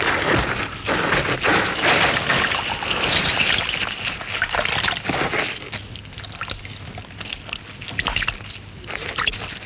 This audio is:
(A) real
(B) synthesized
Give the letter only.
A